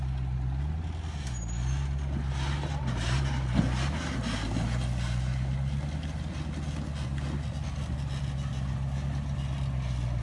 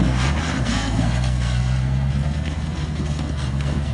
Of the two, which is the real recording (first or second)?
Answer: first